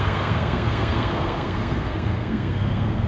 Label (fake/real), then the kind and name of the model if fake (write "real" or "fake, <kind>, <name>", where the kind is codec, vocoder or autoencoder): fake, codec, SNAC